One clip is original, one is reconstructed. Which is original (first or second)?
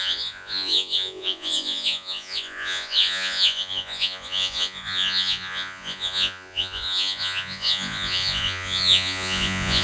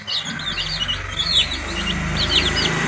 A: second